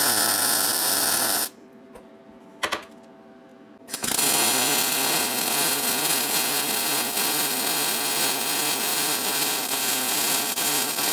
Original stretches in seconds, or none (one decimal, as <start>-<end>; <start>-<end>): 0.0-0.7; 2.1-8.9; 9.5-11.1